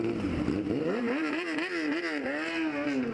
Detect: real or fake real